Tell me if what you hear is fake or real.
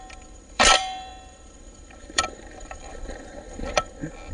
fake